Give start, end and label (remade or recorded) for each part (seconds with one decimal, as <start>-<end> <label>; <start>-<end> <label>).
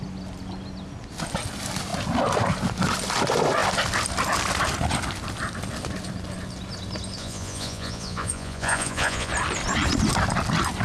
0.0-7.2 recorded; 7.2-9.3 remade; 9.3-10.8 recorded